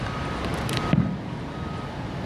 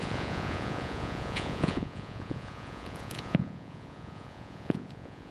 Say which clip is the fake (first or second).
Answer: second